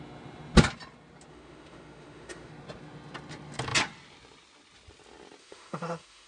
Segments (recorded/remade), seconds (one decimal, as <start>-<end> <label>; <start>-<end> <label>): 0.0-1.3 recorded; 1.3-2.5 remade; 2.5-5.4 recorded; 5.4-6.3 remade